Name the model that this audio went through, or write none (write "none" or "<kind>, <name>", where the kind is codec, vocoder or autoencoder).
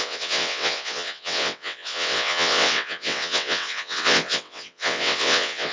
vocoder, WaveNeXt